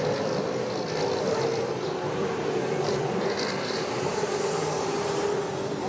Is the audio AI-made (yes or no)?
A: yes